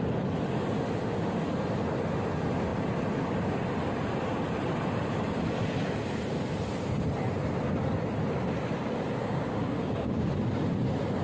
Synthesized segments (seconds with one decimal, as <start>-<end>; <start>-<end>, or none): 9.2-10.3